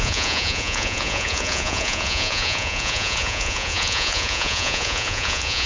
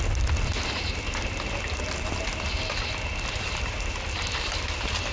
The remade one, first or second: first